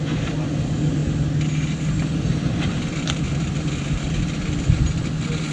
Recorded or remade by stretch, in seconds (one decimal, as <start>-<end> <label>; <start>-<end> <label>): 0.0-5.5 recorded